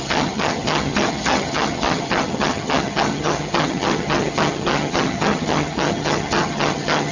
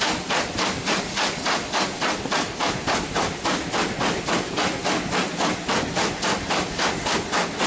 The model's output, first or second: first